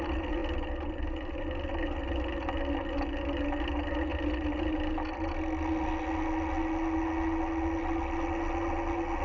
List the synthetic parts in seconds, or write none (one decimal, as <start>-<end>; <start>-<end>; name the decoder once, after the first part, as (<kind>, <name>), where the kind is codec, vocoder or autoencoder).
none